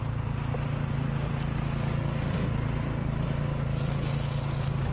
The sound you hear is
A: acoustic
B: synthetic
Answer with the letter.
A